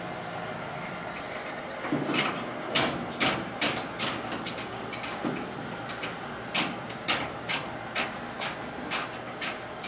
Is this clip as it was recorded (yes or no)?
yes